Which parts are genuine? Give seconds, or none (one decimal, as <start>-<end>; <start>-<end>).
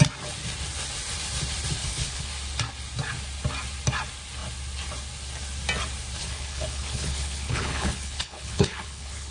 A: 0.0-1.8; 2.3-6.2